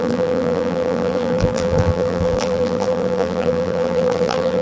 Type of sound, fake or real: fake